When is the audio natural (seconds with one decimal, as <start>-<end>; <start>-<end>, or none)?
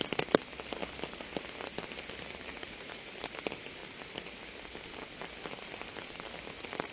0.0-2.5; 3.1-6.9